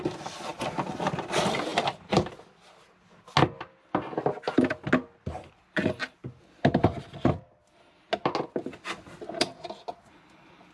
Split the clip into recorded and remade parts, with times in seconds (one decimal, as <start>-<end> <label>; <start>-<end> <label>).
0.0-10.7 recorded